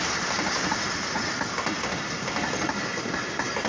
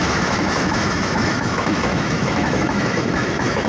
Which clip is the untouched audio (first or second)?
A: first